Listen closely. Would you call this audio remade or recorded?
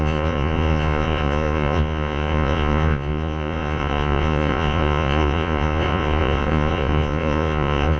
remade